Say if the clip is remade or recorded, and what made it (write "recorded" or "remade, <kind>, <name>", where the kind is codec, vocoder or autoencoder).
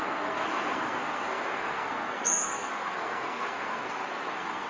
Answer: remade, codec, SNAC